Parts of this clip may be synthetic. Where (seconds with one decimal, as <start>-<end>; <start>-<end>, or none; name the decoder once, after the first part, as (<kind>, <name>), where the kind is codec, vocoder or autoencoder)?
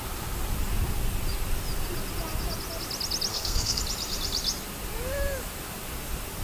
3.3-3.8 (codec, SNAC)